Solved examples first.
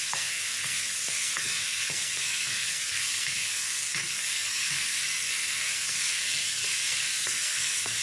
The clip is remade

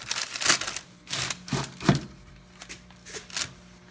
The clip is recorded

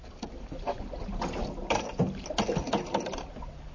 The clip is recorded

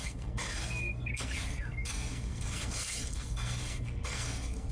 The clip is remade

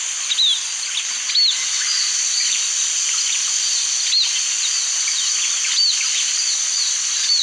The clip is recorded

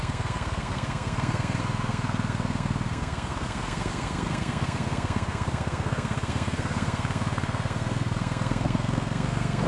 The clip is remade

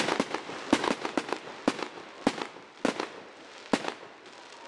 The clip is recorded